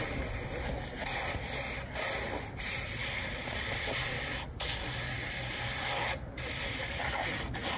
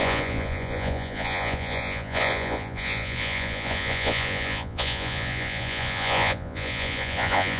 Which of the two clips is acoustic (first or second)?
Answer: first